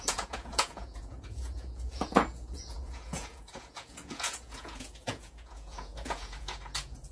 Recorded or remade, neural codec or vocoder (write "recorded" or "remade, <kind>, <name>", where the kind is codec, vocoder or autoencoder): remade, vocoder, Vocos